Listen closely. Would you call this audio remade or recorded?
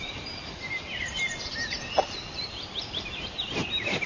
remade